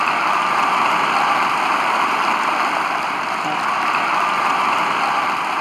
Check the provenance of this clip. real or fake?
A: fake